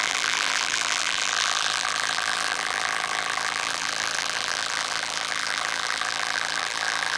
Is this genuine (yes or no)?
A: no